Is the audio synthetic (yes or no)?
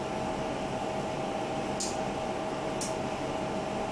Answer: no